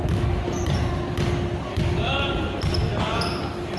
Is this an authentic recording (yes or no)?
yes